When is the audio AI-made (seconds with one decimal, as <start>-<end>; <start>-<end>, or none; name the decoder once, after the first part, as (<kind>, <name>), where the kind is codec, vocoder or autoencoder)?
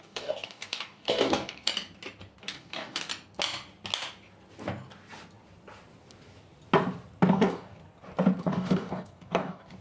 0.0-1.7 (codec, DAC); 2.4-3.1; 7.3-7.8; 8.4-9.8